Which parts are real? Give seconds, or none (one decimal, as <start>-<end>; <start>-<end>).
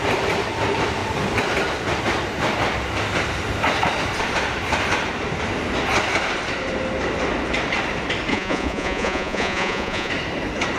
0.0-8.3; 10.1-10.8